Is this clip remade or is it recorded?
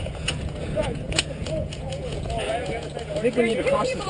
remade